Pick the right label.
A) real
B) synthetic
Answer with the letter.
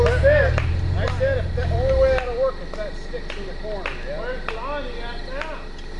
A